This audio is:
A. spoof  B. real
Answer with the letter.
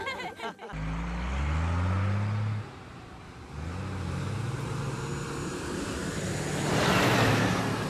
B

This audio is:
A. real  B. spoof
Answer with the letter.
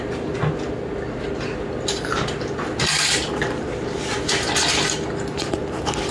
A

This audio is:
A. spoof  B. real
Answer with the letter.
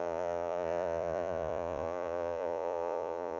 A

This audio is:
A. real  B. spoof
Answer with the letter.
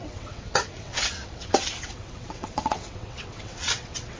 B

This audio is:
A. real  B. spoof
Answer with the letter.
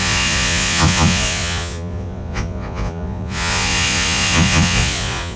B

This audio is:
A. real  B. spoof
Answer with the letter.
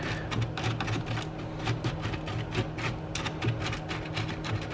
A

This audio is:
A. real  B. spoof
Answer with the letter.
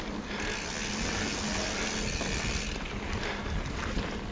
A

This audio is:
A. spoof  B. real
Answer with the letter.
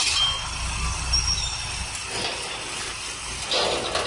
B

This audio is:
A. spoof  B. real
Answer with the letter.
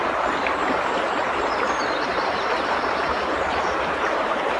A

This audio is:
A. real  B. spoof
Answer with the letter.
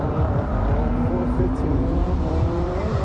B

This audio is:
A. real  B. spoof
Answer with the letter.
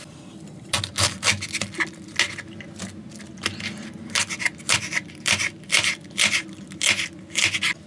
A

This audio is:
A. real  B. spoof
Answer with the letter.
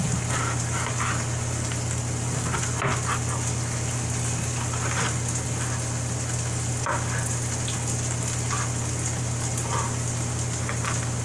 A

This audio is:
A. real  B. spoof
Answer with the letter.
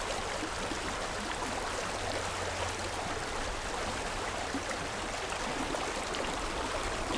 A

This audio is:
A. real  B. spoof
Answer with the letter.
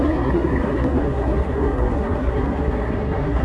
B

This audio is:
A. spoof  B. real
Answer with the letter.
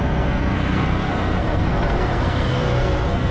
A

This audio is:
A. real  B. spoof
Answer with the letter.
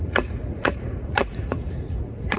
B